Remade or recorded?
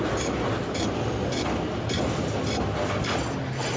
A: recorded